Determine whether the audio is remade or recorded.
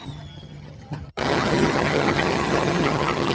remade